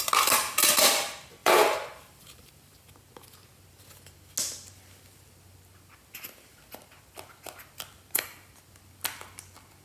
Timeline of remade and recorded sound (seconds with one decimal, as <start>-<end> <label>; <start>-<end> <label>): 0.0-1.4 recorded; 1.4-2.9 remade; 2.9-9.8 recorded